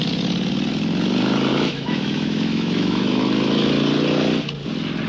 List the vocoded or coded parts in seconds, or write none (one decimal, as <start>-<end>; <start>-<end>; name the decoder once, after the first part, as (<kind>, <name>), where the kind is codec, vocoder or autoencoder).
1.5-3.2 (autoencoder, DAC-VAE)